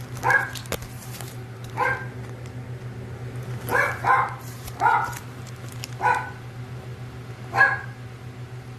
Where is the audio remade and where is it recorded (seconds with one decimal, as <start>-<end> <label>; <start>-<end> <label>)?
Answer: 0.0-1.0 recorded; 1.0-1.9 remade; 1.9-3.7 recorded; 3.7-6.1 remade; 6.1-8.8 recorded